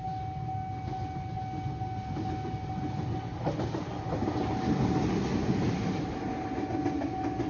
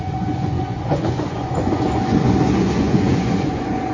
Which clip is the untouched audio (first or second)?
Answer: first